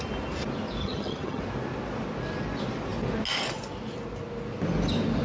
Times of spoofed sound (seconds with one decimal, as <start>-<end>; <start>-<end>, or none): 0.8-1.4